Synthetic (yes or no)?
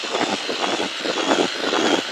no